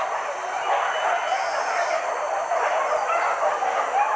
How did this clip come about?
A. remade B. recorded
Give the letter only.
B